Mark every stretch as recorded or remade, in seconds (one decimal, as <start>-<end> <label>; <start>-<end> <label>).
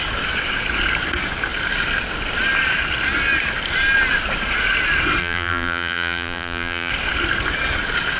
0.0-5.2 recorded; 5.2-6.9 remade; 6.9-8.2 recorded